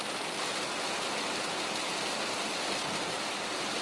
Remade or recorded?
remade